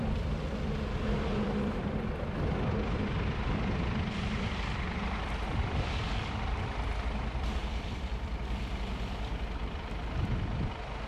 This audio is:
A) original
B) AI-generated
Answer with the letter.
B